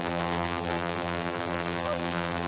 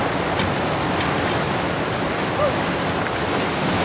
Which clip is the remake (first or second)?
first